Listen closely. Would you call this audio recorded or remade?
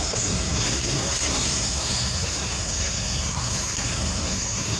remade